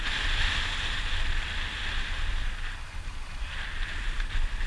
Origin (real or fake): real